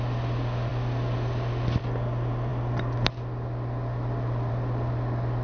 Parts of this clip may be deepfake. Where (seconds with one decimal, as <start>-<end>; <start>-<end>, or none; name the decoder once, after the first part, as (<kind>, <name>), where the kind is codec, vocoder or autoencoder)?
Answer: none